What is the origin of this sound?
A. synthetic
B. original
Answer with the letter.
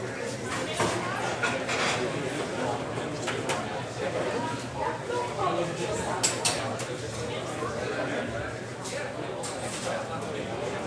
B